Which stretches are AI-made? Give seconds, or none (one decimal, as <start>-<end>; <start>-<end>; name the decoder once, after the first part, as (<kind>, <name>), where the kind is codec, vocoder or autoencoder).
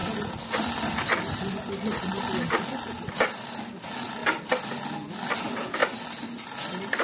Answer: none